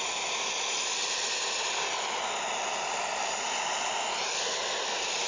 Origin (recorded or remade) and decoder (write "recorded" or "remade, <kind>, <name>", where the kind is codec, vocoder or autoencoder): recorded